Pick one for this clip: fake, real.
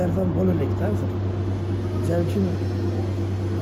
real